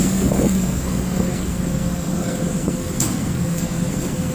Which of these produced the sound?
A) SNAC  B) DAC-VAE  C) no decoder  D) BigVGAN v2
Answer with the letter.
A